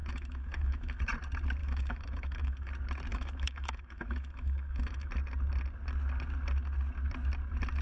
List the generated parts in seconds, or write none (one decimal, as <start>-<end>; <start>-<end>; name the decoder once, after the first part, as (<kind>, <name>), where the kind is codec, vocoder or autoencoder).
0.0-1.0 (autoencoder, DAC-VAE); 1.6-2.7; 3.1-5.1